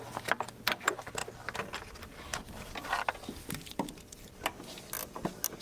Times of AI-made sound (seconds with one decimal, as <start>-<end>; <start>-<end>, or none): none